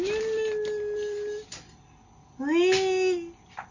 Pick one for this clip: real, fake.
real